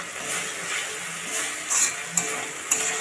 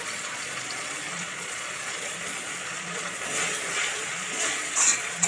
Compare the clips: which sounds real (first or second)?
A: first